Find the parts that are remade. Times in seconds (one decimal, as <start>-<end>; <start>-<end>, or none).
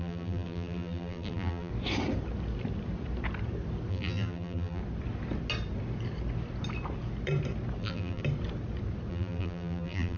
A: 0.0-1.7; 3.9-4.8; 7.8-8.2; 9.1-10.2